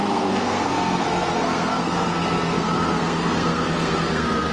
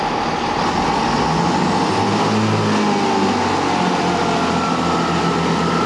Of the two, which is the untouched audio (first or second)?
second